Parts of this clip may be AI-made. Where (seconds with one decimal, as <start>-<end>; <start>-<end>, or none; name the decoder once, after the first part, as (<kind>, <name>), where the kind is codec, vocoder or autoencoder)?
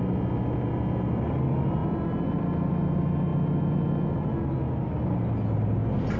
none